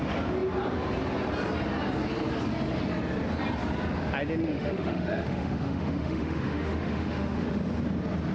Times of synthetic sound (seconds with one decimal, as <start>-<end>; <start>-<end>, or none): 4.4-7.6